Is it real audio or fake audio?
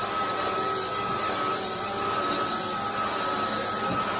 real